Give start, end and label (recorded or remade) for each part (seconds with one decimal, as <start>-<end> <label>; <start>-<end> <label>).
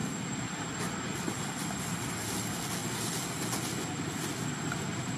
0.0-5.2 recorded